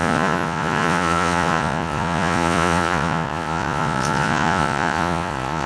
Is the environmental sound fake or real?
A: fake